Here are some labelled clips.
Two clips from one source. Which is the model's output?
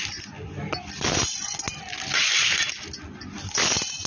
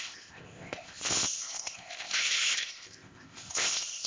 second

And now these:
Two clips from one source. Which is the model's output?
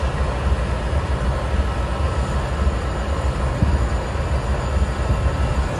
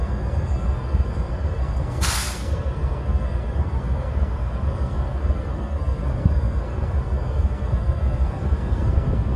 second